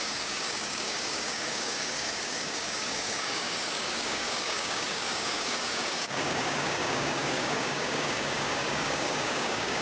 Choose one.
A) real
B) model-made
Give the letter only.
B